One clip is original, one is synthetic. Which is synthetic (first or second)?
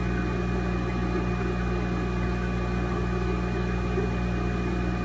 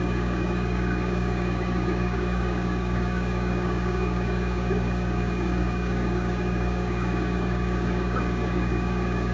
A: second